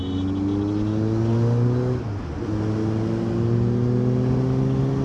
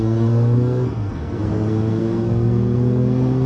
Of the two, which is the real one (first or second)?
first